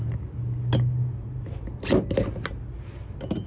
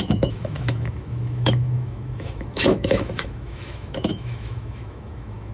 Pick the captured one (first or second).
first